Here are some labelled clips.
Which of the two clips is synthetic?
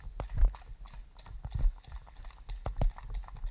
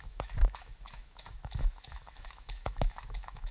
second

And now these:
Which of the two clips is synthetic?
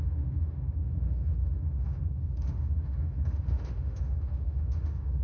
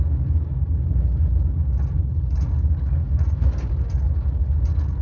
first